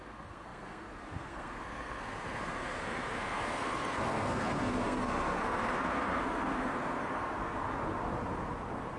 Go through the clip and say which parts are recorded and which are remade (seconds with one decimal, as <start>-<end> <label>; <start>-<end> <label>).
0.0-7.6 remade; 7.6-9.0 recorded